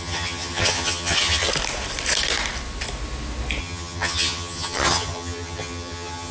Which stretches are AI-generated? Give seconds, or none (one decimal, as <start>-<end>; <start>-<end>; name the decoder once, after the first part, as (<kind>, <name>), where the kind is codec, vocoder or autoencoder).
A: 0.0-1.5 (vocoder, HiFi-GAN); 3.6-6.3